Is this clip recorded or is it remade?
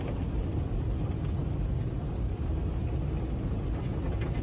recorded